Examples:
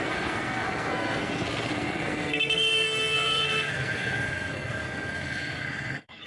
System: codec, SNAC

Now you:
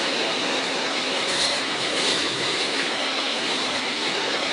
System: codec, SNAC